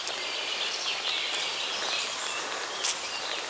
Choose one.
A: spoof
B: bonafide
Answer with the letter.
B